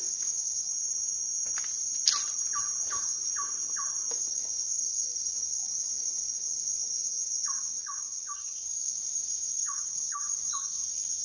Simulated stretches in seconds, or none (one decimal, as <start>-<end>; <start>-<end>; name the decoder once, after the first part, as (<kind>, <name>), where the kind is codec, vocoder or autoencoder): 0.0-0.7 (codec, DAC); 2.9-3.3; 4.1-11.2